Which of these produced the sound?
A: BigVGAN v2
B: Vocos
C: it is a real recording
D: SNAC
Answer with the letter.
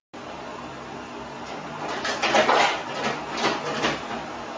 C